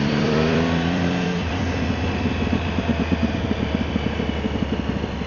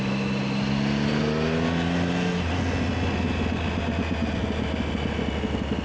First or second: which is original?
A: second